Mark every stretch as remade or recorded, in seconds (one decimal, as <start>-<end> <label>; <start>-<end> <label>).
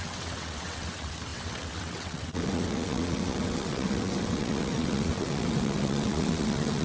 0.0-6.8 remade